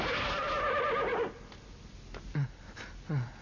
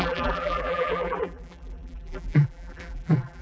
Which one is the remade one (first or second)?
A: second